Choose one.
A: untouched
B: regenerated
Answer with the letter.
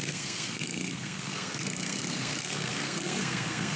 B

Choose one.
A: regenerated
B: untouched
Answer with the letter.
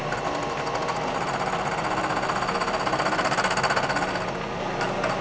B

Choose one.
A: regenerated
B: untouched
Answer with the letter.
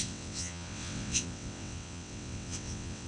A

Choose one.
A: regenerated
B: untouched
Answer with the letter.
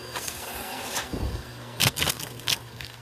A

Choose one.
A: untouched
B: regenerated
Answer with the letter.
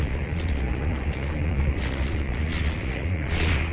B